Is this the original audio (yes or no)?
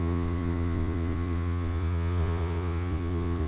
no